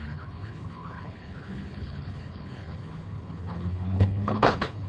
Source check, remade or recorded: remade